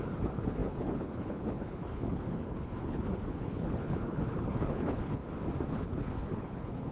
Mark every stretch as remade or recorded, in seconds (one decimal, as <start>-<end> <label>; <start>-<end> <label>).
0.0-5.2 remade; 5.2-5.7 recorded; 5.7-6.9 remade